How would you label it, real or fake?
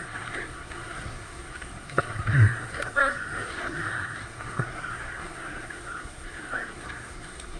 fake